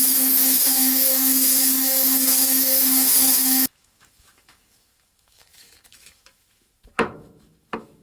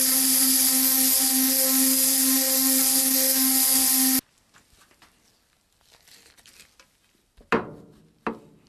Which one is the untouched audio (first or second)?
second